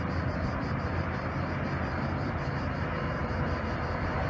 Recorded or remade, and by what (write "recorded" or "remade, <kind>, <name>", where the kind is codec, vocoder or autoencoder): recorded